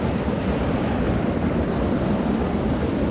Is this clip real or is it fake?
real